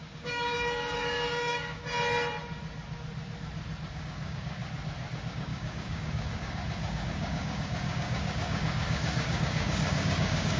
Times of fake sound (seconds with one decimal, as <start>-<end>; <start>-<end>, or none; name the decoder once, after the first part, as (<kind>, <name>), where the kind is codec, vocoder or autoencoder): 0.0-1.8 (codec, DAC); 3.9-4.6; 5.3-10.6